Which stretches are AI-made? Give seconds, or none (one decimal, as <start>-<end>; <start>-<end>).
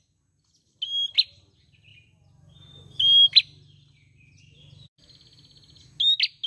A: none